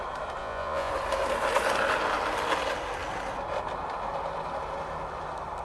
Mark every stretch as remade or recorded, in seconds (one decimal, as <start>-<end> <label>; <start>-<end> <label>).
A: 0.0-0.4 recorded; 0.4-0.9 remade; 0.9-5.6 recorded